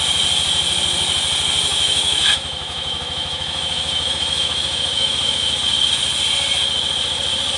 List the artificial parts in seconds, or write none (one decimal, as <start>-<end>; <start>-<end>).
1.7-5.6